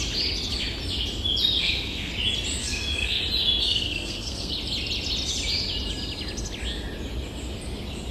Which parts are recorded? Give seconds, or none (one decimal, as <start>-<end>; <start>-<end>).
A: 0.0-1.6; 2.1-2.6; 3.2-3.6; 4.5-8.1